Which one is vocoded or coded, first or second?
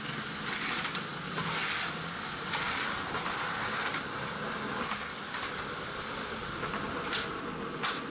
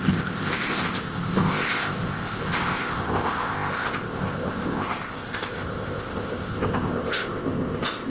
second